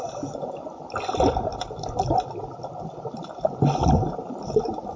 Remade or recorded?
recorded